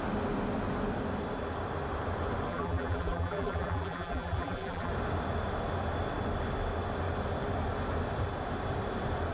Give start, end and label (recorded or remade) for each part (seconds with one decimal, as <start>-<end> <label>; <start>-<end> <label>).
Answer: 0.0-2.5 recorded; 2.5-4.9 remade; 4.9-9.3 recorded